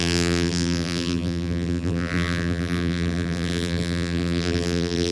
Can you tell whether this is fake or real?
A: fake